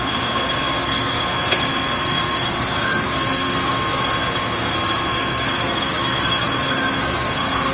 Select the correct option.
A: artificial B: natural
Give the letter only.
A